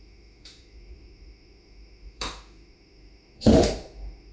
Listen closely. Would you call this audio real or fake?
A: fake